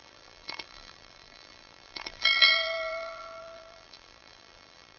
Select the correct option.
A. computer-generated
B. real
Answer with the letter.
A